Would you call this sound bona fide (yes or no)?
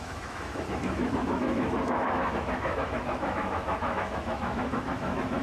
no